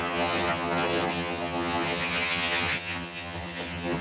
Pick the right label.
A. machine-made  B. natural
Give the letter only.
A